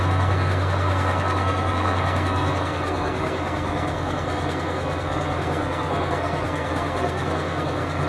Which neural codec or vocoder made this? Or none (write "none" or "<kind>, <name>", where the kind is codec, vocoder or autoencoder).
codec, SNAC